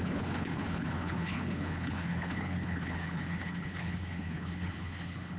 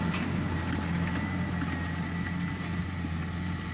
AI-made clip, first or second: first